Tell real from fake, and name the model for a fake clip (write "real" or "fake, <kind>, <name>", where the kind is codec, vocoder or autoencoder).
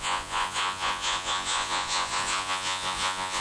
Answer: fake, vocoder, Vocos